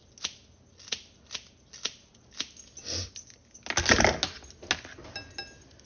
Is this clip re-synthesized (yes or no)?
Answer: no